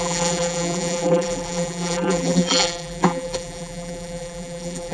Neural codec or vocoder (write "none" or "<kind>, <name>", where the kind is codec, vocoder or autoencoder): vocoder, BigVGAN v2